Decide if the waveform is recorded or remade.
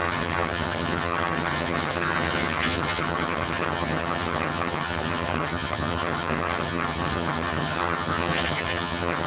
remade